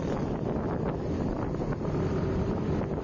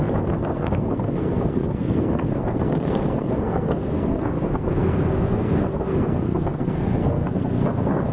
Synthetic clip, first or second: second